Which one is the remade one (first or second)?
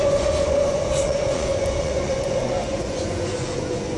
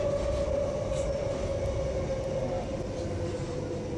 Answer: first